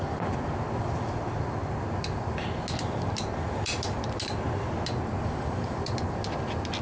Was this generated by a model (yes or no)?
no